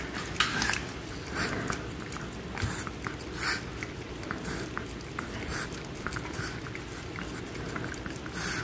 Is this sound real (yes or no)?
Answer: yes